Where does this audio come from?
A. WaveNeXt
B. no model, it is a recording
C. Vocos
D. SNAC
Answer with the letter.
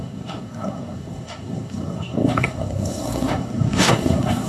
D